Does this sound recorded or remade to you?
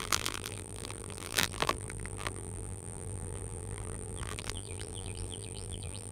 remade